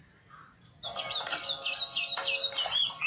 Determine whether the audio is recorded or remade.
recorded